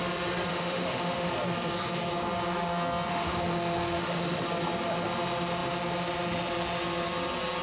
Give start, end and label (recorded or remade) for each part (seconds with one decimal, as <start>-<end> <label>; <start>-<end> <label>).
0.0-0.5 recorded; 0.5-1.3 remade; 1.3-3.1 recorded; 3.1-4.4 remade; 4.4-7.6 recorded